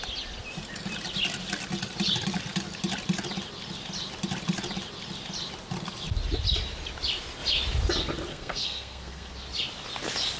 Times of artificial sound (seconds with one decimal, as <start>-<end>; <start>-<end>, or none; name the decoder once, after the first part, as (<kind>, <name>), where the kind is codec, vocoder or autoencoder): 8.3-9.3 (codec, SNAC)